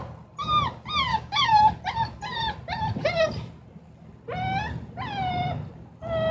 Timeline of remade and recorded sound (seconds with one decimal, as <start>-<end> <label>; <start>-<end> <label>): 0.0-1.1 recorded; 1.1-1.6 remade; 1.6-6.3 recorded